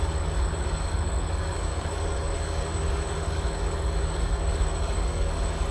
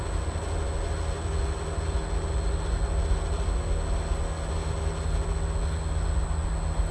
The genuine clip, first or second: second